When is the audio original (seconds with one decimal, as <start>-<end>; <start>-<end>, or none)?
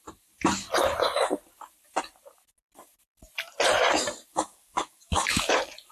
0.0-4.3; 5.5-5.9